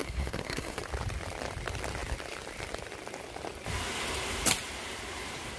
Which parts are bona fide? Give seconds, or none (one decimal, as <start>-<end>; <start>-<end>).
0.8-5.6